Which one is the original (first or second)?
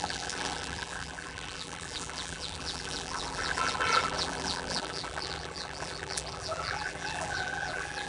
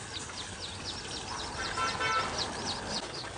second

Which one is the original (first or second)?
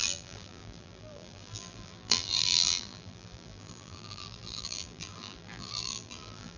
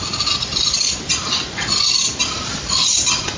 second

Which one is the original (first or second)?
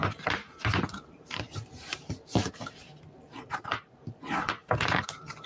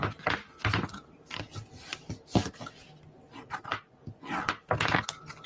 second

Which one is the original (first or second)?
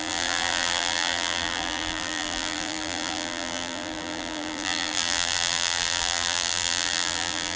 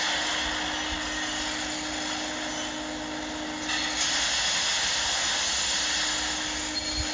second